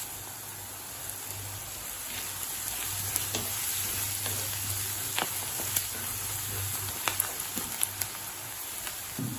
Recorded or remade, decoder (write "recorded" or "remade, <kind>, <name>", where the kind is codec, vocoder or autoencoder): recorded